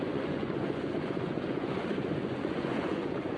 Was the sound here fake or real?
fake